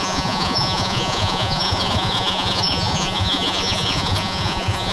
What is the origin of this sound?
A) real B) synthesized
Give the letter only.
B